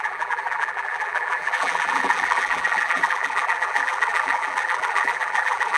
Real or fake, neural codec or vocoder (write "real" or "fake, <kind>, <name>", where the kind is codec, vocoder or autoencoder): fake, vocoder, BigVGAN v2